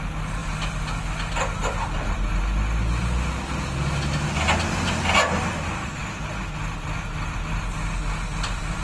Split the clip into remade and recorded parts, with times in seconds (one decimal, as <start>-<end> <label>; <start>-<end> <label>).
0.0-8.8 recorded